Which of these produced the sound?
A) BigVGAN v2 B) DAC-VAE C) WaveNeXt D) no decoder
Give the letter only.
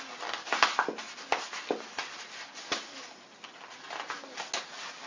D